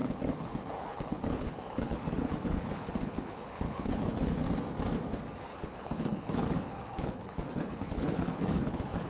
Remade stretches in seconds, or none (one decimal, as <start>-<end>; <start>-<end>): 0.0-4.4; 5.5-9.1